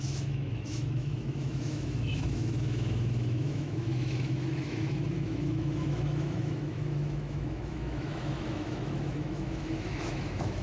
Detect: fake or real fake